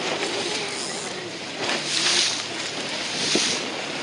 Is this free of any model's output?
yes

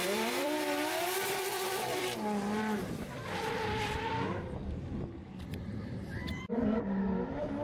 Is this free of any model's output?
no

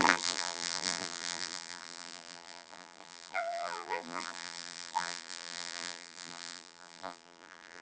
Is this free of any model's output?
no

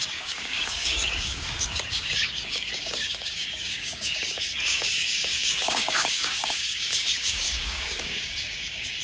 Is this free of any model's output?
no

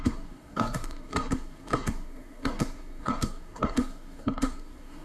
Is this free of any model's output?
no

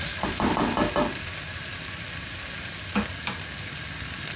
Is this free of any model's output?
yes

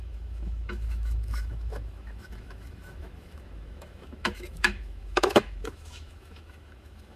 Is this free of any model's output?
no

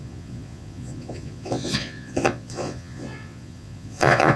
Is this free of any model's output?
no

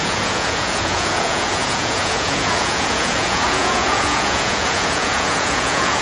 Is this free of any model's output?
no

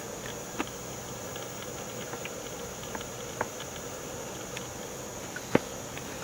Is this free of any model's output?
yes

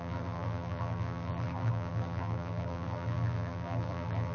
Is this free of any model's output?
no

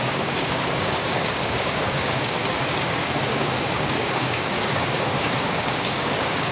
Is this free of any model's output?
no